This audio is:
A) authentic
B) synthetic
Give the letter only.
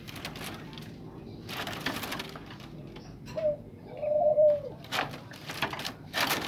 B